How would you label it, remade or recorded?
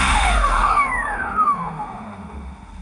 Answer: remade